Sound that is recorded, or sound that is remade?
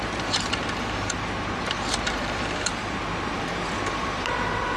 remade